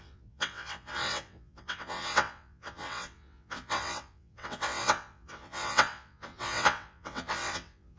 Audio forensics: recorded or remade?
remade